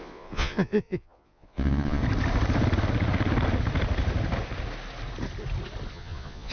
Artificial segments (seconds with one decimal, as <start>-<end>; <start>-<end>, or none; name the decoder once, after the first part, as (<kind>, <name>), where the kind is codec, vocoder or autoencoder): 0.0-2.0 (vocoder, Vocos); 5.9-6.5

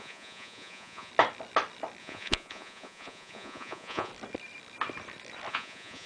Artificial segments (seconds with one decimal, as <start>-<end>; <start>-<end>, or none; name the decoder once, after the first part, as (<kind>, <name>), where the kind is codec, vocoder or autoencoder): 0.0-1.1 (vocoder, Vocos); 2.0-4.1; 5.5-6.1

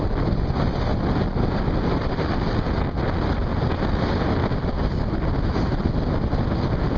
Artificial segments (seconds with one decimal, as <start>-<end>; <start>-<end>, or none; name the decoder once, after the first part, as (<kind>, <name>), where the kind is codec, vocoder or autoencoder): none